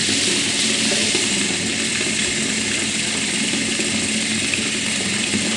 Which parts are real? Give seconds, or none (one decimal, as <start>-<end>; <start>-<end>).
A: 0.8-5.6